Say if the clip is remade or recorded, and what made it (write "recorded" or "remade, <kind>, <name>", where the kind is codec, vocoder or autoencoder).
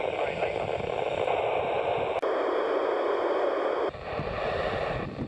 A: recorded